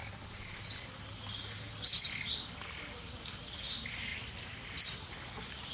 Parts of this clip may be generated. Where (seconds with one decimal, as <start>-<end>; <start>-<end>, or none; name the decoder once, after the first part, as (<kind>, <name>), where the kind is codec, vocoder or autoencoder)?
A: none